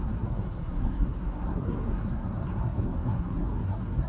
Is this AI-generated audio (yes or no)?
yes